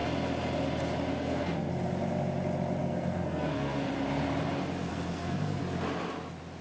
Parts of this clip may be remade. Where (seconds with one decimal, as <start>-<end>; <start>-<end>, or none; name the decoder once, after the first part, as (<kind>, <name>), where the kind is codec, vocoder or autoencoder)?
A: 1.1-1.7 (codec, SNAC); 2.8-3.9; 4.9-5.6